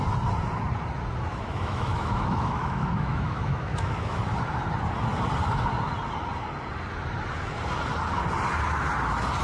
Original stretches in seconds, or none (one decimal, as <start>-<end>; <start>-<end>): 0.0-1.3; 4.2-9.4